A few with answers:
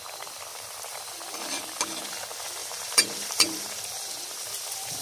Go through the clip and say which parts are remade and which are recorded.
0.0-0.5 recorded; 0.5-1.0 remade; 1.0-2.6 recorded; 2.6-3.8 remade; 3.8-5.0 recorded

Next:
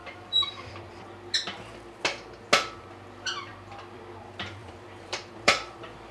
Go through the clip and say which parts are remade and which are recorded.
0.0-0.9 remade; 0.9-3.5 recorded; 3.5-4.0 remade; 4.0-4.6 recorded; 4.6-6.1 remade